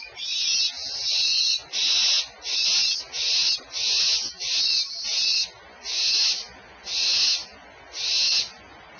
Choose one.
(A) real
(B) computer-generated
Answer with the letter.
A